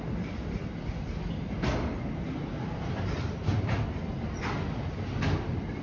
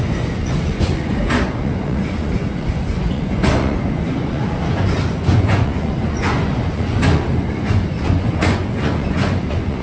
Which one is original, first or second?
first